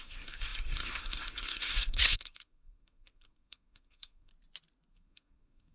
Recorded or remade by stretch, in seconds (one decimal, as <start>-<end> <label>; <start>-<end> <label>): 0.0-4.3 remade; 4.3-4.9 recorded; 4.9-5.7 remade